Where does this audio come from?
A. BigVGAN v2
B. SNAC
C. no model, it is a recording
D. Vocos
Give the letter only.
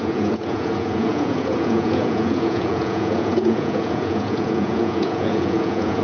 D